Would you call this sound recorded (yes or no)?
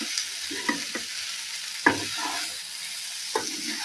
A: yes